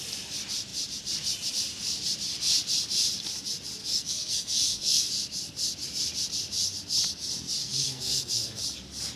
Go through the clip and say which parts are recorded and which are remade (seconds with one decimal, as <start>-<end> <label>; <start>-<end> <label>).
0.0-3.8 recorded; 3.8-5.1 remade; 5.1-7.6 recorded; 7.6-8.6 remade; 8.6-9.2 recorded